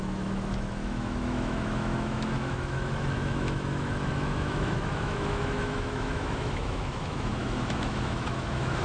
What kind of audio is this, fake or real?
fake